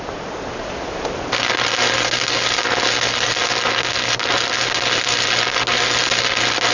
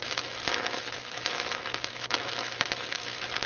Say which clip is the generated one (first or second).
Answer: second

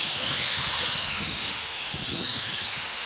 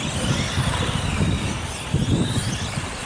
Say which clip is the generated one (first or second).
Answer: first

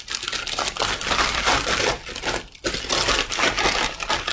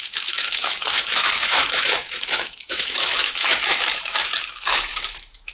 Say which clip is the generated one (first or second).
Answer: second